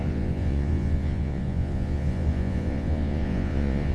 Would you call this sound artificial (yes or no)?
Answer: yes